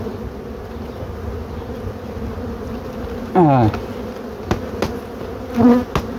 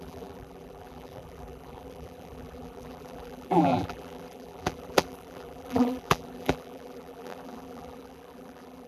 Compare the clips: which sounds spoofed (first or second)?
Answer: second